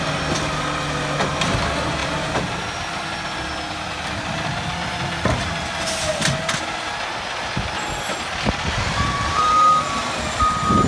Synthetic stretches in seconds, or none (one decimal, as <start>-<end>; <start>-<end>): 2.0-2.6